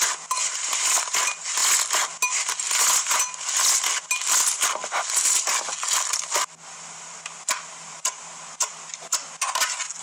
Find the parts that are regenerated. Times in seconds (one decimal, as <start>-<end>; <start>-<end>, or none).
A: none